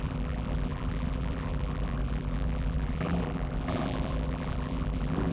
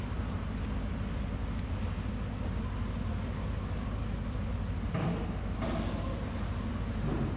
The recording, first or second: second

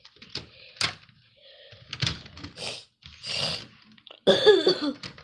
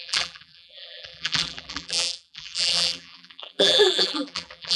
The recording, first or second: first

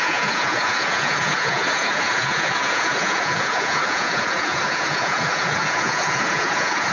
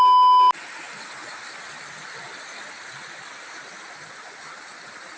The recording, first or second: second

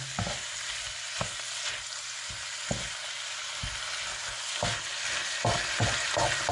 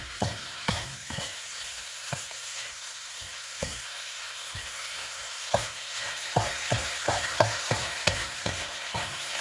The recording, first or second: first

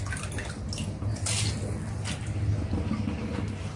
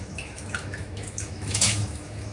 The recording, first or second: first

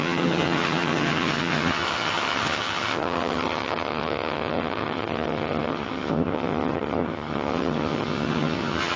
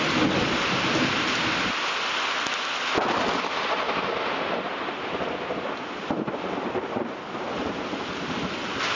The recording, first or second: second